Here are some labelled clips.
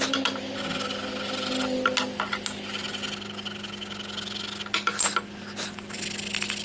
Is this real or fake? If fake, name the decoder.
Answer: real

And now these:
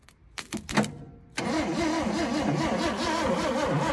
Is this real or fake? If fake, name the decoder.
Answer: real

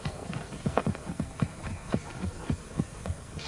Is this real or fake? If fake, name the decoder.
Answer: fake, codec, SNAC